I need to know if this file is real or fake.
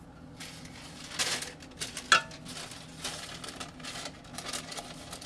real